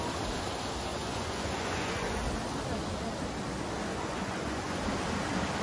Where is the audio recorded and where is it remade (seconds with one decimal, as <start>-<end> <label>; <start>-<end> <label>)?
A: 0.0-0.9 recorded; 0.9-2.2 remade; 2.2-3.9 recorded; 3.9-4.8 remade; 4.8-5.6 recorded